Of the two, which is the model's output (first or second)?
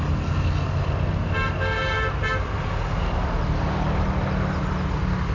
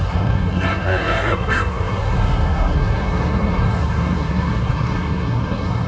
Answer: second